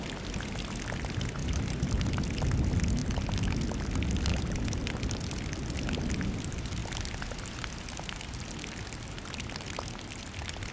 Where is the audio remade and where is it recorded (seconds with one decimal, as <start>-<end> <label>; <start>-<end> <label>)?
0.0-1.4 recorded; 1.4-1.9 remade; 1.9-4.3 recorded; 4.3-4.9 remade; 4.9-10.7 recorded